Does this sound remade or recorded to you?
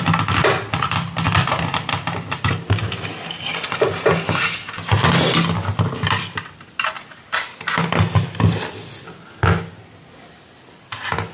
recorded